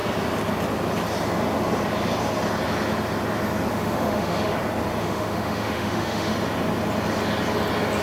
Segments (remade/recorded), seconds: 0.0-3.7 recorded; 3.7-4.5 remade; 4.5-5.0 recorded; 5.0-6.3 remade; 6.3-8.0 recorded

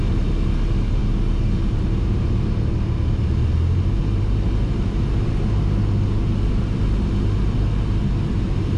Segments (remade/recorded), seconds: 0.0-8.8 recorded

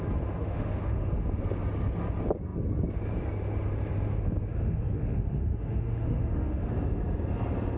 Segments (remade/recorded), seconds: 0.0-0.4 recorded; 0.4-1.1 remade; 1.1-4.5 recorded; 4.5-6.7 remade; 6.7-7.8 recorded

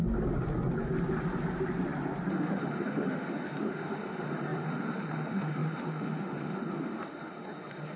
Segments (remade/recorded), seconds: 0.0-2.3 recorded; 2.3-8.0 remade